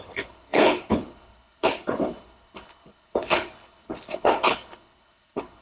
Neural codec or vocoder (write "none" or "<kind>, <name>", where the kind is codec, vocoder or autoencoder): codec, HILCodec